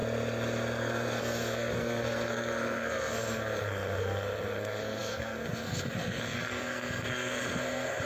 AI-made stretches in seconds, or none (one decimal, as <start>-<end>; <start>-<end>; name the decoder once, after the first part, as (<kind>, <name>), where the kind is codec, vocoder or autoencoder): 0.8-8.1 (codec, SNAC)